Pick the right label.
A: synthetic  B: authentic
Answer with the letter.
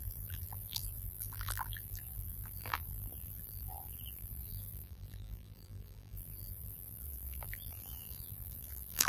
A